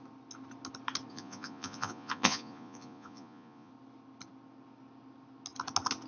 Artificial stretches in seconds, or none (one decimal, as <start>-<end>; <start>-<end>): 1.1-3.7